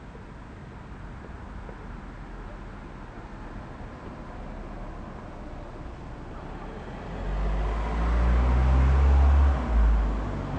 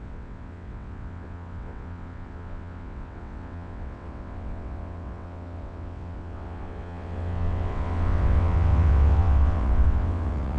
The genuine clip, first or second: first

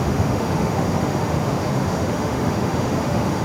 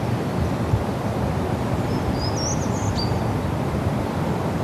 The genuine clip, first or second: second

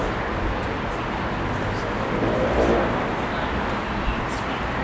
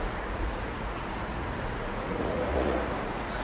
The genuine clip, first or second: first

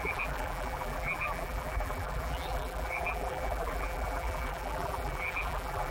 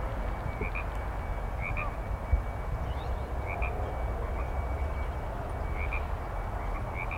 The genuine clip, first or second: second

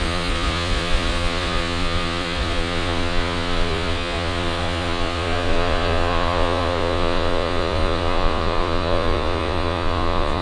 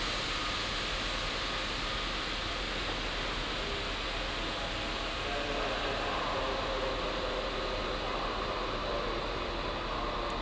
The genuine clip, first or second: second